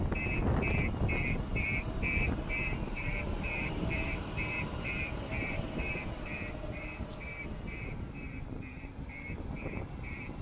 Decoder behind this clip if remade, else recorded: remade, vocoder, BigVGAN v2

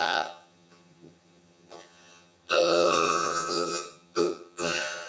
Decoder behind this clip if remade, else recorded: remade, vocoder, HiFi-GAN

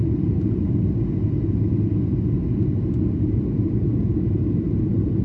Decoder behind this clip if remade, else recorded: recorded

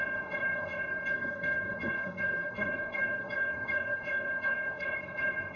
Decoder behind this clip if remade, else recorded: remade, codec, SNAC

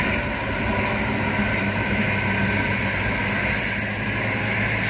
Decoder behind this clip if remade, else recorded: recorded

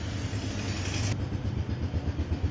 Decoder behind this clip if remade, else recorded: recorded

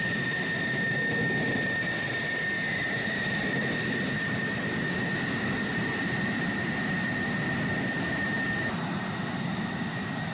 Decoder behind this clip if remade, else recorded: recorded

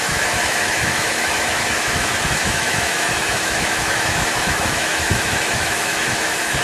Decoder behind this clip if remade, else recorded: remade, autoencoder, DAC-VAE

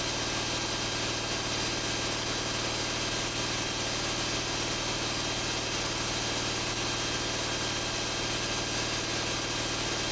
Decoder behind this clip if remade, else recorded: recorded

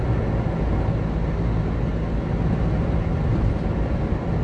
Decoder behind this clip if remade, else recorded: recorded